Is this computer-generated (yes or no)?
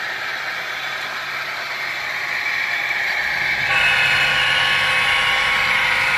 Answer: no